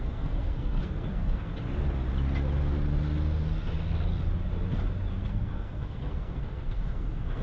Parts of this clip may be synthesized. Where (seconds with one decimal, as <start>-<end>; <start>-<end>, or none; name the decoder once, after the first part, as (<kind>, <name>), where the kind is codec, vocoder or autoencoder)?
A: 0.0-1.5 (codec, SNAC); 5.1-7.4